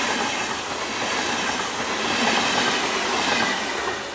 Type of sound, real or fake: real